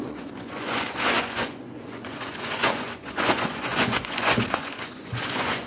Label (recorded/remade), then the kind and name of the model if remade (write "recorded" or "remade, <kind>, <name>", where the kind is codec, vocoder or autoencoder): remade, vocoder, Vocos